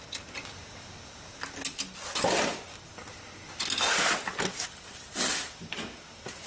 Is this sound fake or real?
fake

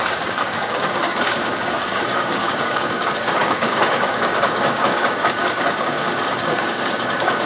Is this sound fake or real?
fake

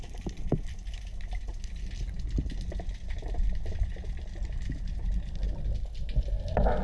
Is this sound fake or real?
real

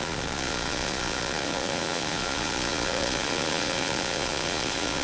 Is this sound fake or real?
fake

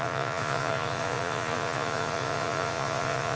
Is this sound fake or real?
fake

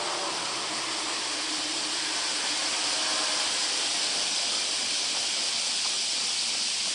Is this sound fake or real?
real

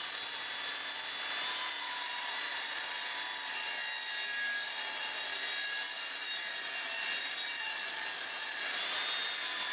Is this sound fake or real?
real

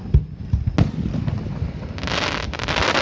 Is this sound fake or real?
real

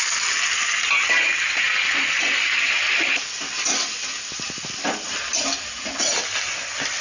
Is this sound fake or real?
real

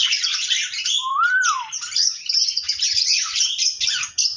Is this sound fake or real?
fake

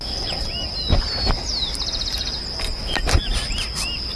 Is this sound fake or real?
real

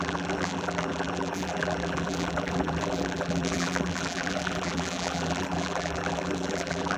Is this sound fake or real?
fake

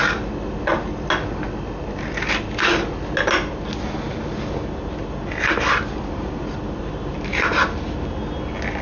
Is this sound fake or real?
real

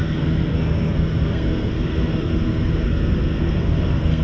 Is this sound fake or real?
fake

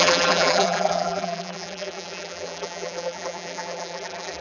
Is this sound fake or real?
fake